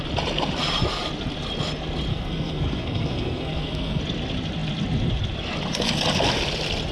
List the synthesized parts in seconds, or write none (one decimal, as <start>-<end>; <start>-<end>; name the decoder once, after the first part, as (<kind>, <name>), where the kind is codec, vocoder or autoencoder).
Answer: 2.1-4.0 (codec, SNAC)